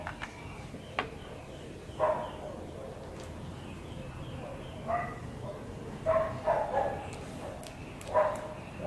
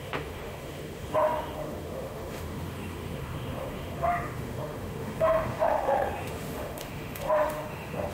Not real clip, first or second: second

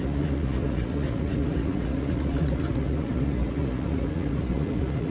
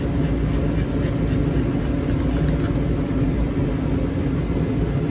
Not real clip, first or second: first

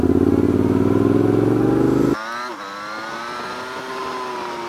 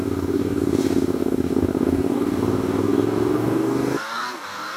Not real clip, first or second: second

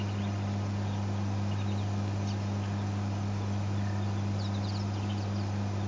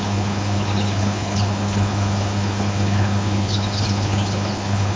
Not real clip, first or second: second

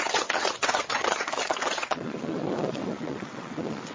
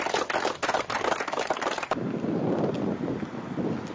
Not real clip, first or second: first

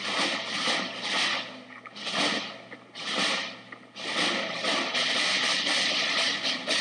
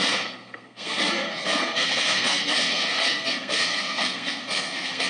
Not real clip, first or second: second